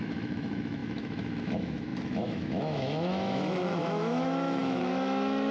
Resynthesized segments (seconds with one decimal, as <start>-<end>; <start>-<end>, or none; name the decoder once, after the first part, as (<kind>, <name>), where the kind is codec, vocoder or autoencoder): 0.0-5.5 (autoencoder, DAC-VAE)